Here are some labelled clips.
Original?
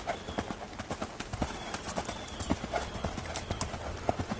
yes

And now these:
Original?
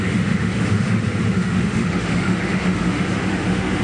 no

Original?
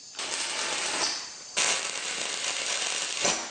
yes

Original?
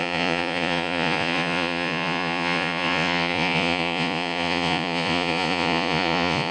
no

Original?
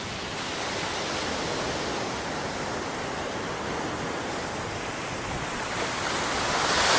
yes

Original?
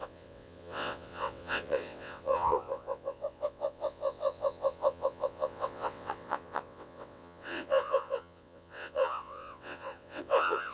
no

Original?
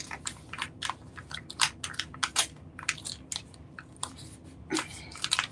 yes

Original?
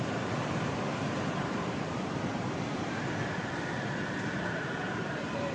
no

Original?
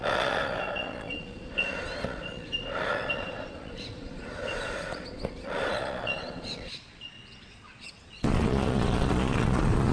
no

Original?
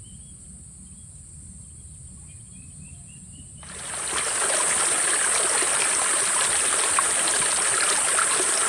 yes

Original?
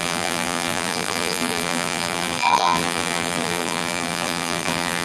no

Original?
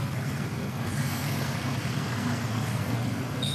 no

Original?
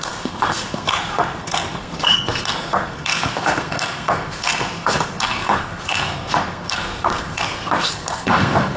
no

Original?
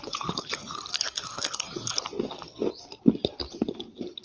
yes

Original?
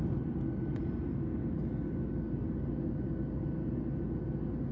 yes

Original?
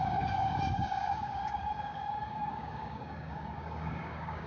no